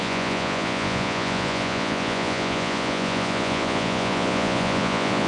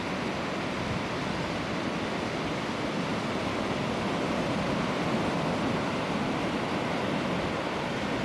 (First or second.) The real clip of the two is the second